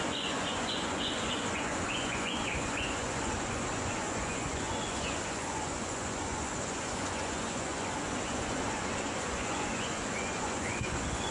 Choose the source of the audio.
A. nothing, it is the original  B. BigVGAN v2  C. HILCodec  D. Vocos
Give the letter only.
D